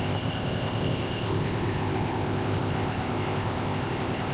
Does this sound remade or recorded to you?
remade